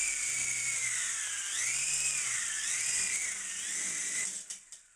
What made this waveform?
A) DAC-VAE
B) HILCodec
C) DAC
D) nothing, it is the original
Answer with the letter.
D